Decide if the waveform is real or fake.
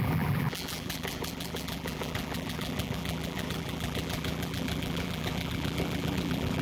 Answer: fake